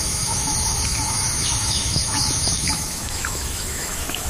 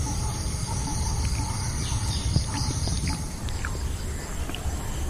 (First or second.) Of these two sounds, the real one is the second